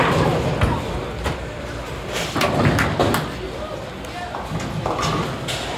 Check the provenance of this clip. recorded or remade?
recorded